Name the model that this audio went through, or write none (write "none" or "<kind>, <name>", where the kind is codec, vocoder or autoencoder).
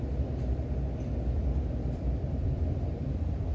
vocoder, BigVGAN v2